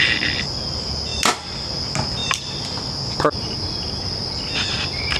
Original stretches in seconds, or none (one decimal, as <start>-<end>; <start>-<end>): 0.0-5.2